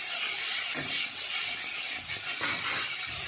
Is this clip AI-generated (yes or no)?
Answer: no